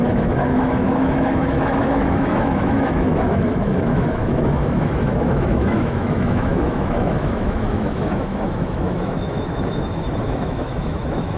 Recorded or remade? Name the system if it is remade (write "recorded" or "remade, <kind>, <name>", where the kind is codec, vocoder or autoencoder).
remade, autoencoder, DAC-VAE